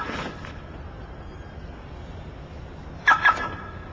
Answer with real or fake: real